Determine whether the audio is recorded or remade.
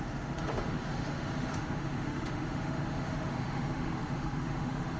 remade